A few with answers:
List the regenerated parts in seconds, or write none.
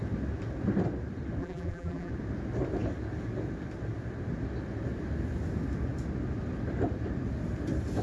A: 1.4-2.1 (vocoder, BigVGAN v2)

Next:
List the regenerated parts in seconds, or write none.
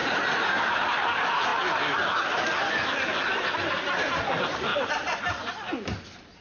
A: 0.0-1.5 (vocoder, BigVGAN v2); 4.2-6.4